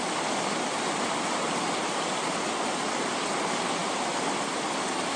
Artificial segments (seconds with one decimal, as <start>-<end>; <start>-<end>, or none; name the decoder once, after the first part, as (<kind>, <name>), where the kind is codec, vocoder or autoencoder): none